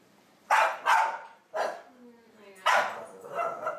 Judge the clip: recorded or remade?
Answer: recorded